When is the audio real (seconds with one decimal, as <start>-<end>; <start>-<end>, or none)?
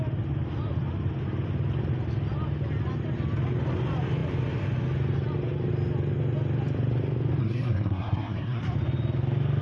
0.0-7.4; 8.6-9.6